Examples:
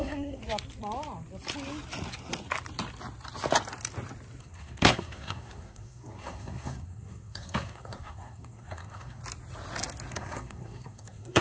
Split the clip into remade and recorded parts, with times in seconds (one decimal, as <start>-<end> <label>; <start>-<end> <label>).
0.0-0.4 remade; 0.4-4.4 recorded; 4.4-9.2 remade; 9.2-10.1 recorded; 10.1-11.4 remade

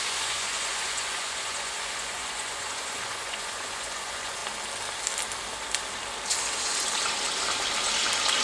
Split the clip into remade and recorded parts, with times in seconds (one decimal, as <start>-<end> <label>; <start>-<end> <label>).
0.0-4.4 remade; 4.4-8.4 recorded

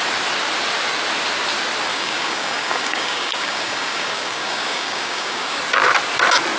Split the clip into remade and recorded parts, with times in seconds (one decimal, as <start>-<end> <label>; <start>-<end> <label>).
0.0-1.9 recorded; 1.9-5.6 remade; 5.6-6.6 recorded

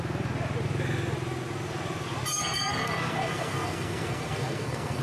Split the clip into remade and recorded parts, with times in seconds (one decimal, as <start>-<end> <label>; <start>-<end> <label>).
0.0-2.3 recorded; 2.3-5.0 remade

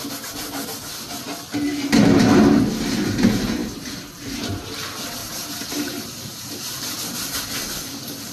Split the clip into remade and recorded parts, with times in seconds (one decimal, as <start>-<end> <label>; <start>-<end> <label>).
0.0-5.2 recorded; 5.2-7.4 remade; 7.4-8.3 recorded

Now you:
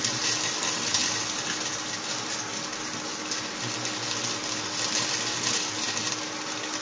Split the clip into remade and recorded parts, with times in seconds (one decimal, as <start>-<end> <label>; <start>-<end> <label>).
0.0-6.8 recorded

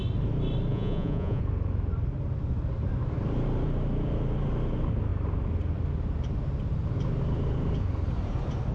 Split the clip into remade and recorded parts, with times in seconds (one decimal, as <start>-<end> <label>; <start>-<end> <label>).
0.0-0.7 recorded; 0.7-1.4 remade; 1.4-8.7 recorded

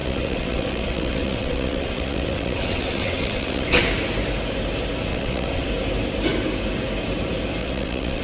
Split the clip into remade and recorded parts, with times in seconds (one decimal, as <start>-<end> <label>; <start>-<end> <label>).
0.0-3.8 remade; 3.8-5.1 recorded; 5.1-5.7 remade; 5.7-7.6 recorded; 7.6-8.2 remade